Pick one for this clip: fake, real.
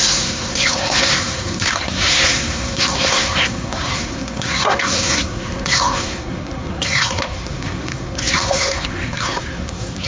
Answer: fake